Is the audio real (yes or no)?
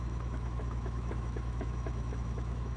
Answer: no